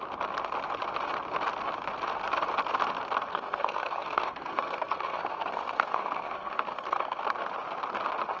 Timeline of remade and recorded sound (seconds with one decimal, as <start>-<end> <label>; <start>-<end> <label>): 0.0-3.3 recorded; 3.3-7.2 remade; 7.2-8.4 recorded

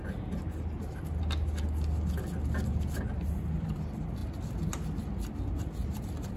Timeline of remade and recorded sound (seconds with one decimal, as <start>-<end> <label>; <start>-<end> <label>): 0.0-6.4 recorded

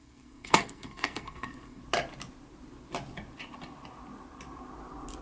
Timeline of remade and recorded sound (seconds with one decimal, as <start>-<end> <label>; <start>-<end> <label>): 0.0-1.8 remade; 1.8-5.2 recorded

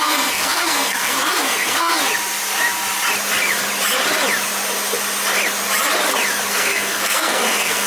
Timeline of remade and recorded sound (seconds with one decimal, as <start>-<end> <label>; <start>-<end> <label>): 0.0-1.9 remade; 1.9-6.5 recorded; 6.5-7.9 remade

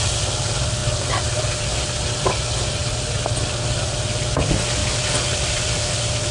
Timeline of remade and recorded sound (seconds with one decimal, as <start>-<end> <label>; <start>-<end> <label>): 0.0-6.3 recorded

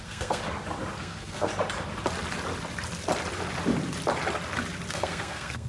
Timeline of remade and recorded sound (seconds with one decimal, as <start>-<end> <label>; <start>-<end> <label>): 0.0-0.4 remade; 0.4-1.0 recorded; 1.0-1.5 remade; 1.5-4.9 recorded; 4.9-5.7 remade

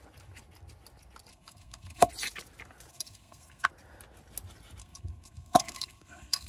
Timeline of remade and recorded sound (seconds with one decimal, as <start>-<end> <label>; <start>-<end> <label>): 0.0-1.3 recorded; 1.3-2.1 remade; 2.1-2.9 recorded; 2.9-3.7 remade; 3.7-4.8 recorded; 4.8-6.5 remade